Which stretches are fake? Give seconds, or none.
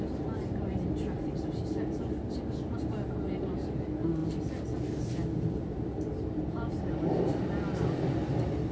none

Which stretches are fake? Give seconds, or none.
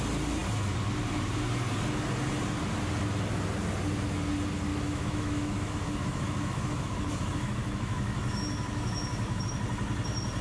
4.7-9.4 (autoencoder, DAC-VAE)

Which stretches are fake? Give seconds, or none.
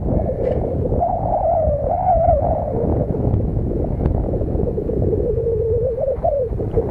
2.9-5.6 (autoencoder, DAC-VAE)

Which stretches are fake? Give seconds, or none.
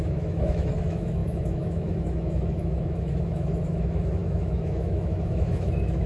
0.0-6.1 (autoencoder, DAC-VAE)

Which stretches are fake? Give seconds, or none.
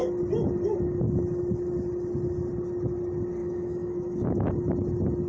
3.4-4.5 (autoencoder, DAC-VAE)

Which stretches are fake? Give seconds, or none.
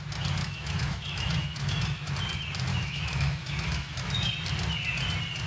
0.4-2.1 (autoencoder, DAC-VAE); 2.7-4.3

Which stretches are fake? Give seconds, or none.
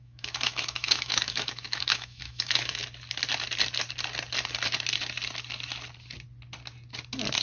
0.0-2.8 (autoencoder, DAC-VAE)